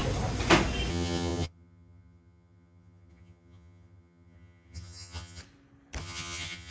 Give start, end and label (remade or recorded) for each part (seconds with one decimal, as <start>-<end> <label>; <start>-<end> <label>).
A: 0.0-0.9 recorded; 0.9-5.4 remade; 5.4-6.0 recorded; 6.0-6.7 remade